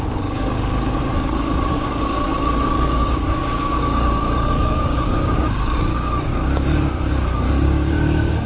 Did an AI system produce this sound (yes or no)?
yes